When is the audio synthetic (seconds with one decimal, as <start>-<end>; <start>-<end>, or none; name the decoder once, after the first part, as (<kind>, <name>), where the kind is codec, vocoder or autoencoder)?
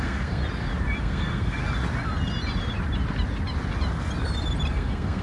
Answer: 0.0-0.4 (codec, SNAC); 1.0-1.6; 4.7-5.2